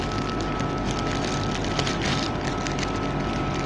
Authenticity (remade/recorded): recorded